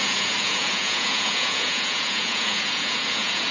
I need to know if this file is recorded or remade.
remade